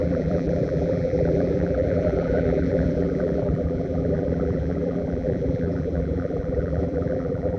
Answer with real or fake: fake